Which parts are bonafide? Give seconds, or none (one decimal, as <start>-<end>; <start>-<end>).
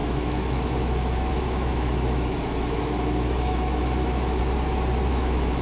4.4-5.1